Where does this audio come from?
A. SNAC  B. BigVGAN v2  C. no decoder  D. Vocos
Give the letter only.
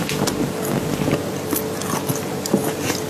C